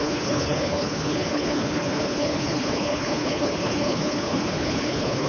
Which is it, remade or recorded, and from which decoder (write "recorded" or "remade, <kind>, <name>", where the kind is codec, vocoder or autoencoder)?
remade, codec, HILCodec